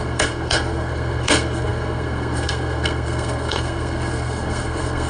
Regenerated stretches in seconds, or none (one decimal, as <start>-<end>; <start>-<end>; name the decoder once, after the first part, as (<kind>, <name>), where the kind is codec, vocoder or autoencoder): 0.0-5.1 (codec, SNAC)